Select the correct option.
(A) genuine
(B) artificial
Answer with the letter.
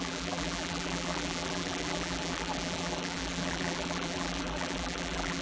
B